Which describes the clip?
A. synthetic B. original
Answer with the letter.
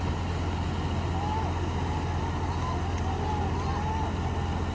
B